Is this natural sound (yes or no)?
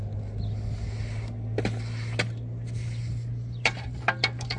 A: yes